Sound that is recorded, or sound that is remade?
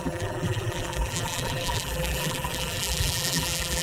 remade